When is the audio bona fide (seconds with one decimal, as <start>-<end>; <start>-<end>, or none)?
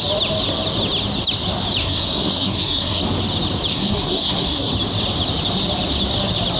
0.0-1.8; 3.0-3.7; 4.7-6.6